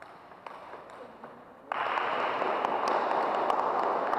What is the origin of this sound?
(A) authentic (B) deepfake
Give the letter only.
A